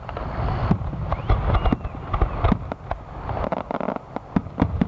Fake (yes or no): no